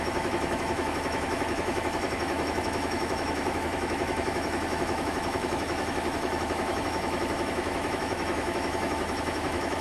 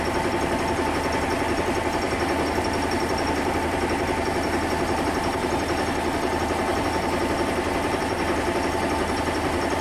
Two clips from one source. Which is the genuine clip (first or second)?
second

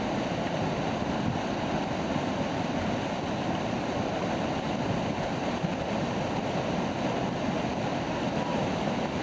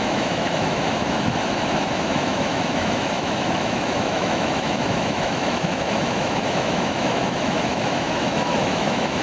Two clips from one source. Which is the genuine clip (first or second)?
first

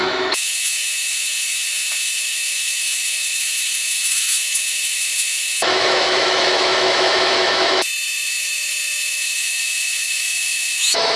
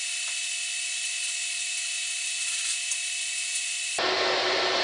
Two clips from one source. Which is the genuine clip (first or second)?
second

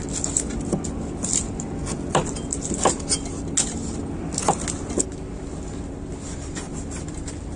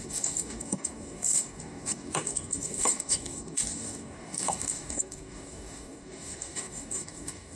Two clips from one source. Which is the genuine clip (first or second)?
first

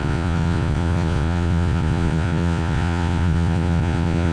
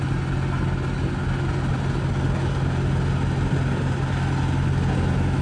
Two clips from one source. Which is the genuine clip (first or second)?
second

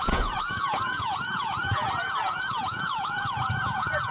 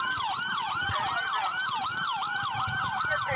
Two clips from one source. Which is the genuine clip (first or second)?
second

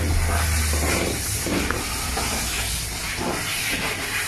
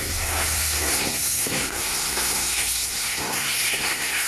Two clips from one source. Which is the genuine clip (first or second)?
first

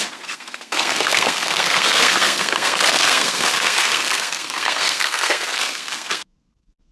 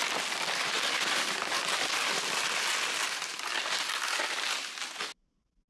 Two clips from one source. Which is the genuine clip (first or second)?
second